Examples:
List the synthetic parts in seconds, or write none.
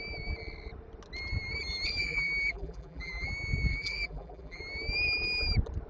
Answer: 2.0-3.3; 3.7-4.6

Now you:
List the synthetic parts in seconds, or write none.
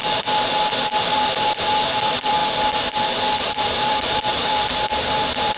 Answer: 1.0-2.4; 3.4-5.6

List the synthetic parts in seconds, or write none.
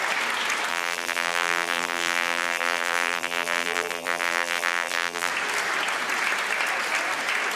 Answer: 0.7-5.3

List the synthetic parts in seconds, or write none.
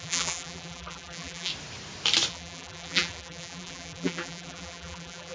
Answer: 0.0-1.5; 2.3-5.3